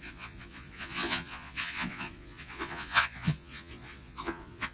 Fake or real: fake